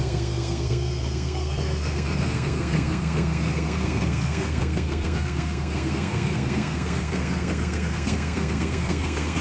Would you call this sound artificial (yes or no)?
yes